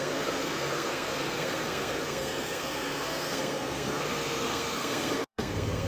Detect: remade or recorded remade